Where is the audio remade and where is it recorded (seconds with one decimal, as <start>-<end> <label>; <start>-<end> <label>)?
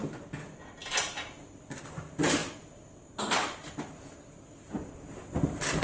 0.0-0.8 recorded; 0.8-1.6 remade; 1.6-2.4 recorded; 2.4-5.8 remade